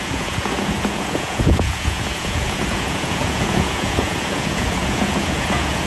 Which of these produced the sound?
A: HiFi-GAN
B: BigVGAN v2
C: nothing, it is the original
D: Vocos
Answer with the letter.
D